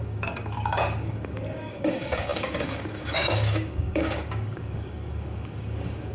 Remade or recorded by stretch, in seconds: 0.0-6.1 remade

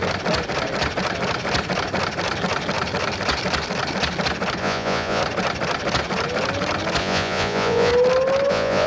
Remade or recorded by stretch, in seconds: 0.0-4.6 recorded; 4.6-5.2 remade; 5.2-7.0 recorded; 7.0-7.9 remade; 7.9-8.5 recorded; 8.5-8.9 remade

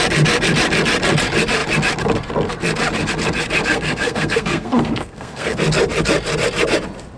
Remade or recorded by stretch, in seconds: 0.0-3.7 recorded; 3.7-5.6 remade; 5.6-7.2 recorded

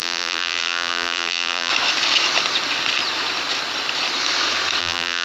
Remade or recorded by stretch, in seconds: 0.0-1.7 remade; 1.7-4.8 recorded; 4.8-5.2 remade